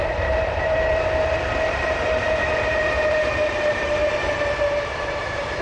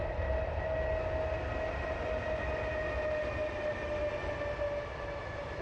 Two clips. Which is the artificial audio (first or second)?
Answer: first